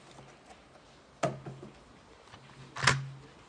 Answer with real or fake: real